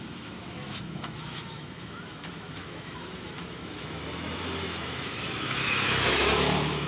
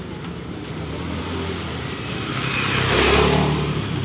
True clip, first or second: second